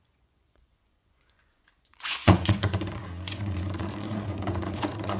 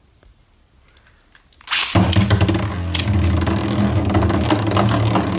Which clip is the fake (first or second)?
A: first